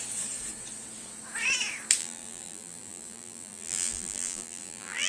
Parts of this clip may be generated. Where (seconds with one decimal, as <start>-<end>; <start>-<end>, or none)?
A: 2.0-5.1